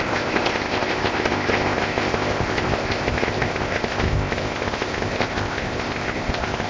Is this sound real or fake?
fake